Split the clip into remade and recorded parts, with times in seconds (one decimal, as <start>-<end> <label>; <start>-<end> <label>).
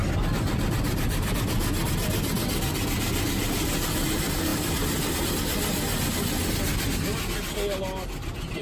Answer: 0.0-1.9 remade; 1.9-8.6 recorded